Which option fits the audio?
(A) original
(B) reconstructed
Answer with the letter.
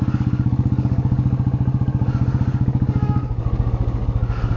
B